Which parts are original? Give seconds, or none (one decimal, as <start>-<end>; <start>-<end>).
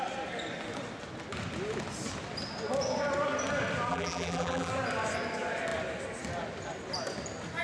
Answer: 0.0-3.9; 4.7-7.6